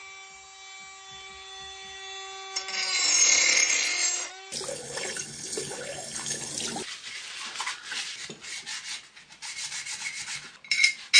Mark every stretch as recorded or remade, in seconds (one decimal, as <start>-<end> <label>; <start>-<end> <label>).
0.0-4.7 recorded; 4.7-6.5 remade; 6.5-11.2 recorded